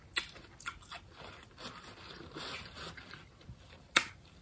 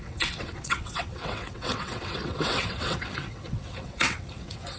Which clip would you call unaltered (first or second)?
first